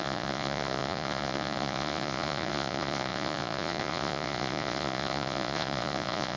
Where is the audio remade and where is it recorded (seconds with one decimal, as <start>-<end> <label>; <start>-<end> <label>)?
0.0-6.4 remade